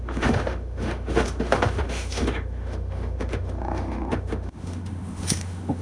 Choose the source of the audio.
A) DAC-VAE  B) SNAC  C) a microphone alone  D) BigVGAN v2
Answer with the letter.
A